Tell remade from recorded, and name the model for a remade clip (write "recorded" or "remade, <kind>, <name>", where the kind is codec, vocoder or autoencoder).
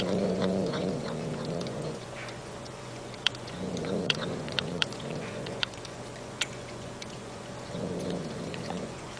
remade, vocoder, Vocos